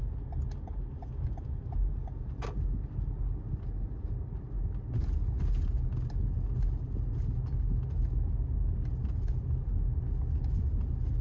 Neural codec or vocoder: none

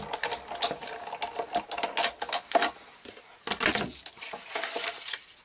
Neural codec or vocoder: none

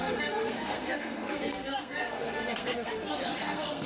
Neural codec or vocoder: codec, SNAC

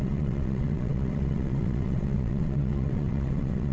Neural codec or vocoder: vocoder, WaveNeXt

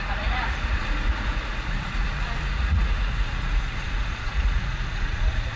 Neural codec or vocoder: vocoder, Vocos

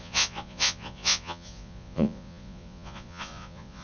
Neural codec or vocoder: vocoder, Vocos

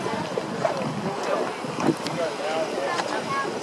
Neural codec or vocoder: none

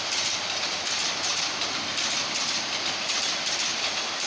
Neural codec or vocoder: none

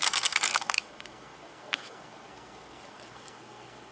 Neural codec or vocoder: codec, SNAC